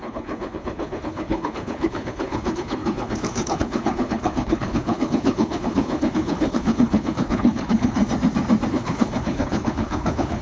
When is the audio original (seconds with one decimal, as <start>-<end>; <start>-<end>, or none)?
8.0-8.7